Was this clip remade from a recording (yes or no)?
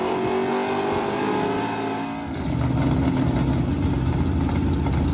no